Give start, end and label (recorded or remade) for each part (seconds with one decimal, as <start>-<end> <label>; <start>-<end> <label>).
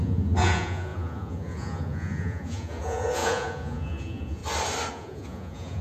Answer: 0.0-4.4 remade; 4.4-4.9 recorded; 4.9-5.8 remade